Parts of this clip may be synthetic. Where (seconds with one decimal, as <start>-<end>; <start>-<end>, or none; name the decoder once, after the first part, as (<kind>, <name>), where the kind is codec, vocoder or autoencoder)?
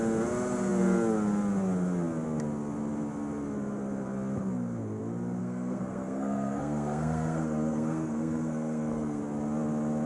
5.4-9.2 (codec, SNAC)